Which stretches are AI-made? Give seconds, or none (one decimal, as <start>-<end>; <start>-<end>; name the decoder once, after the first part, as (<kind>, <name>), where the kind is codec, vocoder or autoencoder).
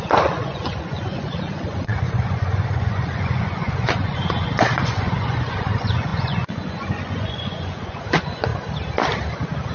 0.0-8.5 (vocoder, Vocos)